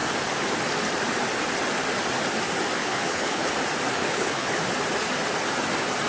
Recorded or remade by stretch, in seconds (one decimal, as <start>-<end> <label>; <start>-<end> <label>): 0.0-2.8 recorded; 2.8-3.5 remade; 3.5-4.0 recorded; 4.0-4.5 remade; 4.5-6.1 recorded